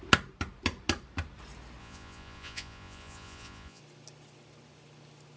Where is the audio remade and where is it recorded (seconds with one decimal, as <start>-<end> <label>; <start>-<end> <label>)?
0.0-1.8 recorded; 1.8-3.8 remade; 3.8-5.4 recorded